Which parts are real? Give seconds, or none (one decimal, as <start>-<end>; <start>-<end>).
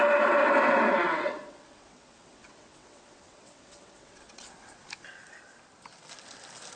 0.0-0.4; 4.5-6.8